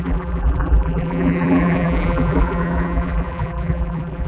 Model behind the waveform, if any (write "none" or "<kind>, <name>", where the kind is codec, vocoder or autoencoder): vocoder, BigVGAN v2